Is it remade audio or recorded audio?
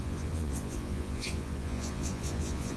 remade